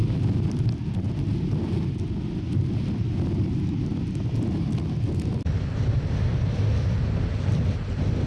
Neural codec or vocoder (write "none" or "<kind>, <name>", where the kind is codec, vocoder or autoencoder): none